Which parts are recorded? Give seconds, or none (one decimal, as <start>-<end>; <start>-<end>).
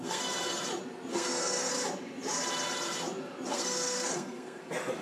0.6-1.1; 1.7-3.5; 4.6-5.0